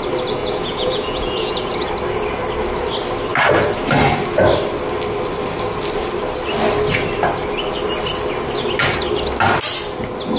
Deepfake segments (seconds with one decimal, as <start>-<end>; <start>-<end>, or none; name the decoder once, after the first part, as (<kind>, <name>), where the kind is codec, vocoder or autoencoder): 0.4-1.9 (vocoder, Vocos)